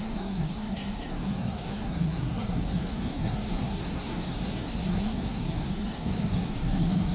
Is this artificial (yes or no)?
yes